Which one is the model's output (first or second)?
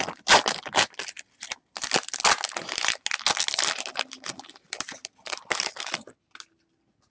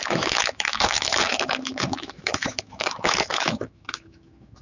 second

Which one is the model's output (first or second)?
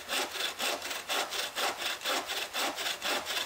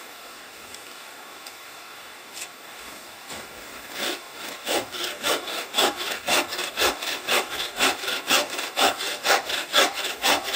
second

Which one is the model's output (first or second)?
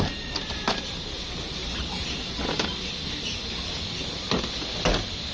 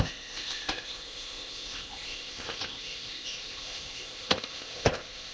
second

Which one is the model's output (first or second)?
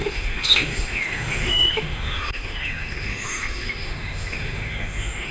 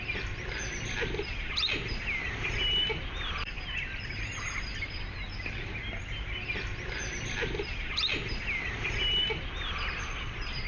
first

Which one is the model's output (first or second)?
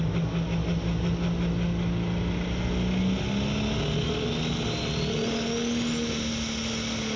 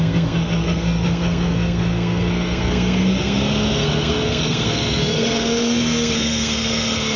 second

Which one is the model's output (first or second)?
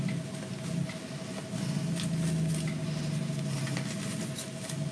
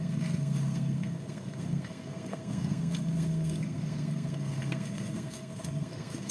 second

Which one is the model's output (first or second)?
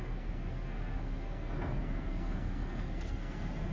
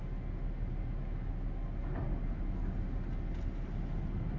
first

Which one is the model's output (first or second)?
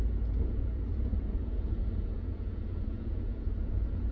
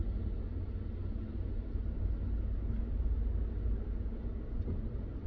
first